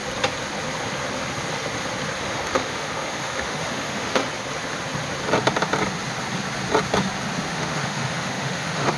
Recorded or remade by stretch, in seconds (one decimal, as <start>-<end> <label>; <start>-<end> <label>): 0.0-2.2 recorded; 2.2-4.2 remade; 4.2-7.5 recorded; 7.5-9.0 remade